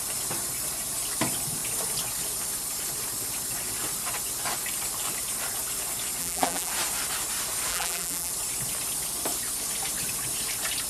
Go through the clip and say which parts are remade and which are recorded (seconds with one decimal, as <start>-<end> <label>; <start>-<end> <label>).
0.0-6.2 recorded; 6.2-6.7 remade; 6.7-7.7 recorded; 7.7-8.3 remade; 8.3-10.9 recorded